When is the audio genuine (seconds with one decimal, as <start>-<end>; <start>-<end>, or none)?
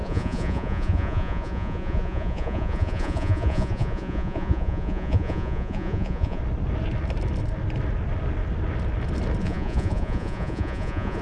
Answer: 6.4-9.4